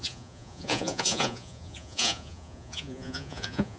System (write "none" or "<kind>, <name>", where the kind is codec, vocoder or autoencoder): vocoder, Vocos